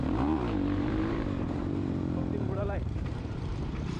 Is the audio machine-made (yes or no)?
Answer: yes